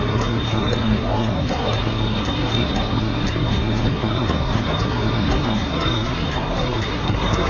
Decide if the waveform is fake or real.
fake